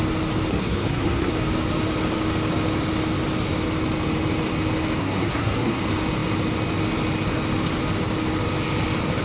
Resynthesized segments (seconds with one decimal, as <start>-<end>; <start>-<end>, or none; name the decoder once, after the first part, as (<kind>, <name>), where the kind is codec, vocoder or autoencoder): 0.5-1.3 (codec, SNAC); 5.0-5.8